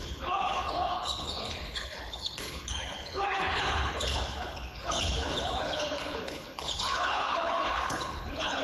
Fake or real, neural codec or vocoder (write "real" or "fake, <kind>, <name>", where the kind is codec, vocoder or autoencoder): fake, codec, HILCodec